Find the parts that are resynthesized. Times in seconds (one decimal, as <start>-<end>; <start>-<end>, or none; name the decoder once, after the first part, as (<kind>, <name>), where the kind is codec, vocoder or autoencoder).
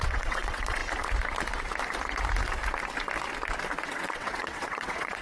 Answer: 0.0-0.8 (vocoder, WaveNeXt); 3.9-5.2